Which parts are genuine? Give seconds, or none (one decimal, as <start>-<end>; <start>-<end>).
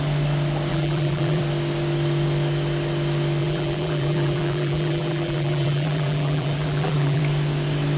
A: 0.0-0.7; 1.4-3.4; 7.2-8.0